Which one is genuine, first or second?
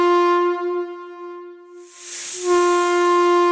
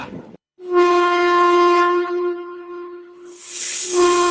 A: first